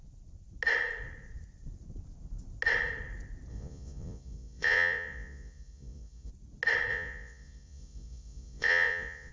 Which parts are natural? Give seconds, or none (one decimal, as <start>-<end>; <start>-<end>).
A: 0.0-3.5; 6.3-6.9